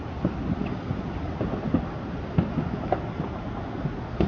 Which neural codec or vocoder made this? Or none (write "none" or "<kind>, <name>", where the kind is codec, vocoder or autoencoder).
none